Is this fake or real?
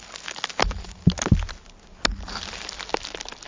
real